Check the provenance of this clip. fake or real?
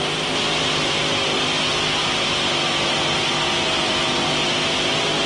real